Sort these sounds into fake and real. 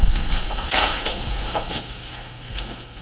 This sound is fake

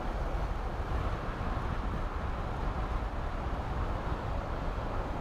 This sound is real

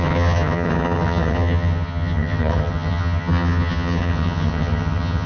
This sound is fake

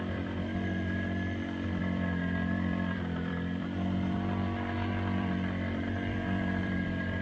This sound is fake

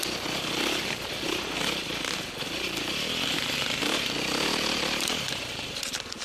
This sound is real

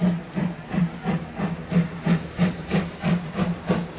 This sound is real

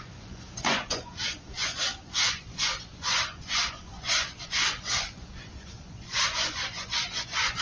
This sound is fake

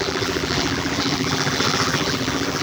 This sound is fake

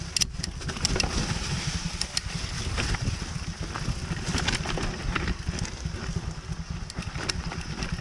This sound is real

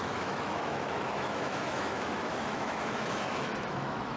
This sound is fake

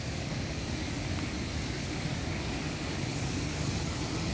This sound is fake